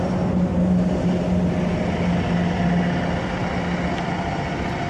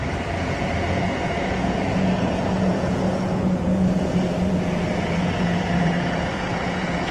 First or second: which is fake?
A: second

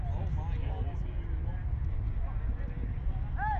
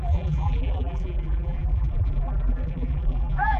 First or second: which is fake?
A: second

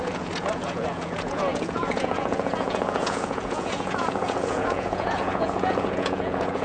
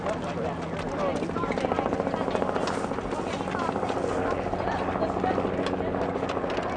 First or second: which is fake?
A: first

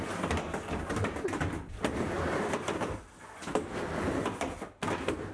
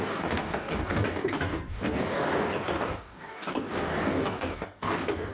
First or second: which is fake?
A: second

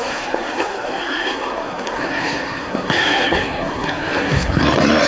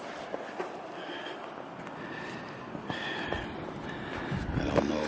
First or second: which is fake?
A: first